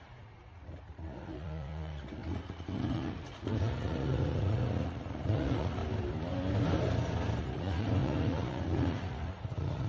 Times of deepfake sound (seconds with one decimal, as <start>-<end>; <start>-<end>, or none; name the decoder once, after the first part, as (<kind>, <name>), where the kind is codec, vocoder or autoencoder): 0.0-5.8 (vocoder, Vocos); 7.4-9.9